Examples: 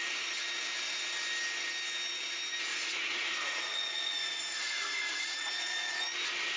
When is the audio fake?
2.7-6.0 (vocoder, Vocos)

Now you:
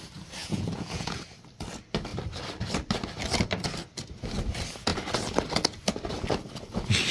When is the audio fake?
0.4-1.2 (vocoder, Vocos)

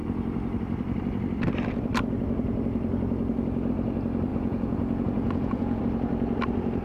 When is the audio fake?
4.3-5.8 (vocoder, Vocos)

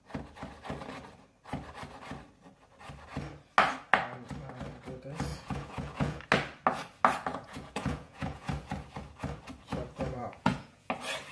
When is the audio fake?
5.3-6.2 (vocoder, Vocos); 7.3-8.5; 10.2-10.9

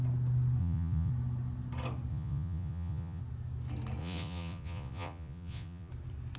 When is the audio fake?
0.6-1.1 (vocoder, Vocos); 2.1-3.2; 4.0-5.9

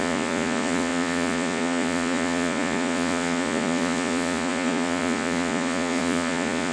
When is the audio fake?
0.0-6.7 (vocoder, Vocos)

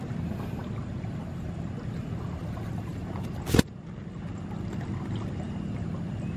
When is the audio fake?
none

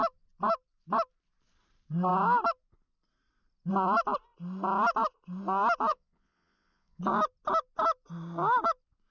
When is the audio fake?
5.9-7.0 (vocoder, Vocos)